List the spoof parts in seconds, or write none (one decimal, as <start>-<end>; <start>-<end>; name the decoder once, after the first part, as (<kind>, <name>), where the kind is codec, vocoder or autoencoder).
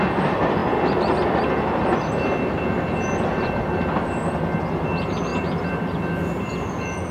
none